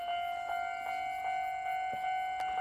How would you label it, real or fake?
real